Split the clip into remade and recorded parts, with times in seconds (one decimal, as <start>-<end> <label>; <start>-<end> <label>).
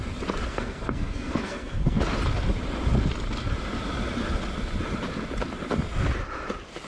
0.0-0.5 recorded; 0.5-2.0 remade; 2.0-6.9 recorded